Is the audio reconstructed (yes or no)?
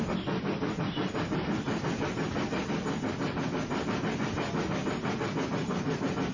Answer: no